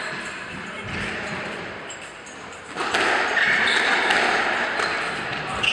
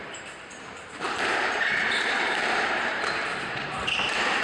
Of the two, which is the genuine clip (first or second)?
first